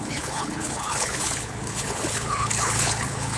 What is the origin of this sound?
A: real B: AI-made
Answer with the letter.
B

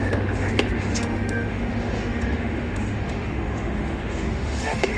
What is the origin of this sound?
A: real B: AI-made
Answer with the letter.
B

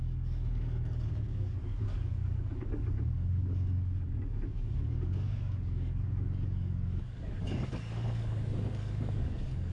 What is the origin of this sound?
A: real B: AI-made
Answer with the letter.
B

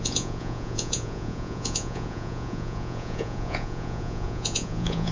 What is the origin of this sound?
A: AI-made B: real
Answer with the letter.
A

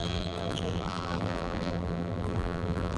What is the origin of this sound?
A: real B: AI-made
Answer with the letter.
B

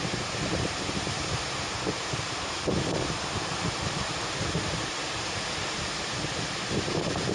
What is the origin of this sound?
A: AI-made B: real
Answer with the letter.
A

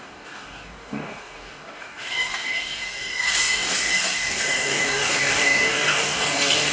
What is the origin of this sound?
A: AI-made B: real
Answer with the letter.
A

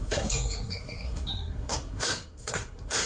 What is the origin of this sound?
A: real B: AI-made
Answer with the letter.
B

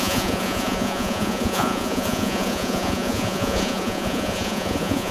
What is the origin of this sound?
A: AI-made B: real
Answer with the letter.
A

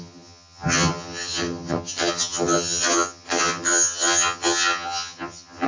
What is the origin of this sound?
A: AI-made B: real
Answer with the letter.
A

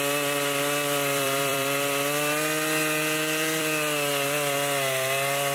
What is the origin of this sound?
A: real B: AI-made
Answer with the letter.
B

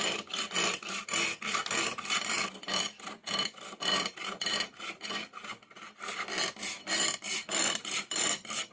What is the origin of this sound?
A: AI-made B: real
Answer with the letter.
B